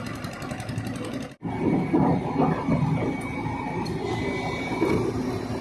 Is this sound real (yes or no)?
yes